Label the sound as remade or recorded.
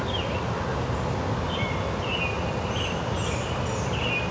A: recorded